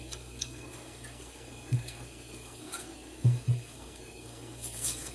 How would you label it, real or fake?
fake